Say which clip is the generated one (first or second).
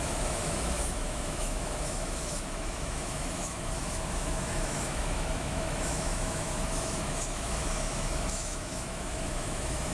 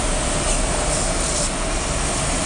first